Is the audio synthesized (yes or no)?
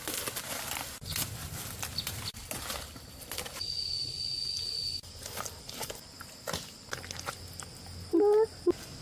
no